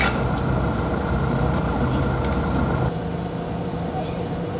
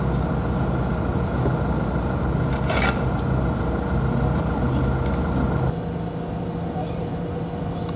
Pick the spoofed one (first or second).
first